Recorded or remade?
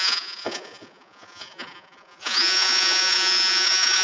remade